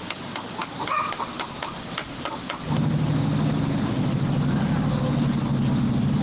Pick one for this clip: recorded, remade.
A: recorded